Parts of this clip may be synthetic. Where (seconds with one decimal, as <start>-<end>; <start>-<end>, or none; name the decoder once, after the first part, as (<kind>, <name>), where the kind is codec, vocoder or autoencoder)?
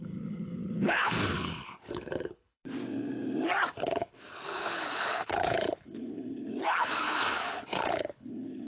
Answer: 0.0-2.6 (codec, HILCodec); 3.8-8.7